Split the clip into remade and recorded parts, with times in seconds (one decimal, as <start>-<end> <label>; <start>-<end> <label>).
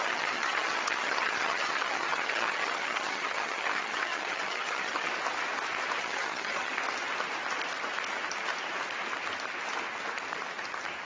0.0-5.1 remade; 5.1-6.0 recorded; 6.0-6.7 remade; 6.7-11.0 recorded